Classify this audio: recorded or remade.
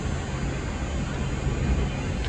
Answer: recorded